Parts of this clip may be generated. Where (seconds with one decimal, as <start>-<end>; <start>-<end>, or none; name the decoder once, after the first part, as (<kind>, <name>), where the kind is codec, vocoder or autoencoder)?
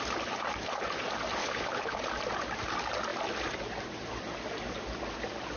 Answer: 1.4-2.0 (codec, HILCodec)